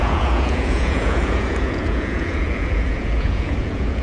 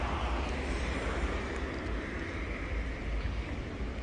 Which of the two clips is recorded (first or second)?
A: second